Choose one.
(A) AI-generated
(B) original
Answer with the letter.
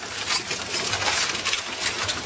B